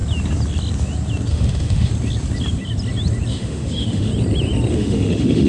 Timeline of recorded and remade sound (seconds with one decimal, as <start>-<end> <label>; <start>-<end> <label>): 0.0-1.3 recorded; 1.3-1.9 remade; 1.9-3.3 recorded; 3.3-4.1 remade; 4.1-4.7 recorded; 4.7-5.5 remade